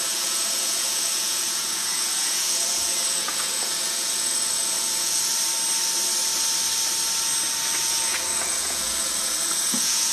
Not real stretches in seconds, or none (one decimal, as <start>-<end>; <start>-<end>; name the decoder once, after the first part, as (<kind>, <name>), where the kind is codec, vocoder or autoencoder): 0.0-5.3 (vocoder, Vocos); 7.8-10.1